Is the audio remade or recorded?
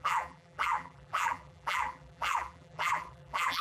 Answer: remade